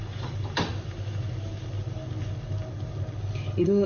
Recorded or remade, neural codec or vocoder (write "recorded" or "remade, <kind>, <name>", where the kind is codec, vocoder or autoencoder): recorded